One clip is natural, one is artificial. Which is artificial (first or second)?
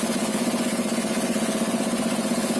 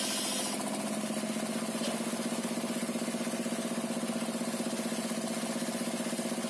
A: first